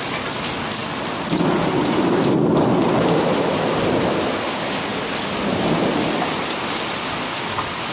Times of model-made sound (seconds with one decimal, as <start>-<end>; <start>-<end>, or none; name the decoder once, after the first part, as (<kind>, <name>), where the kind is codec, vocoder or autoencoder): none